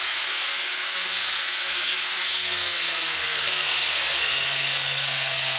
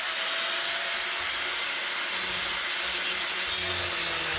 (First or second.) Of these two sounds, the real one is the second